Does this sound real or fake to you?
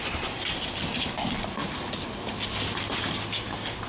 real